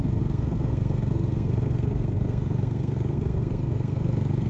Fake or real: fake